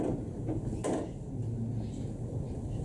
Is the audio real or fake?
real